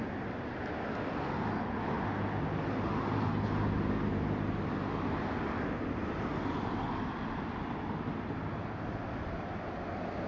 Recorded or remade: recorded